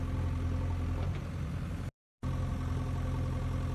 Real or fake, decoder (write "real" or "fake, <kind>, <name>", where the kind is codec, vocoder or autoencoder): real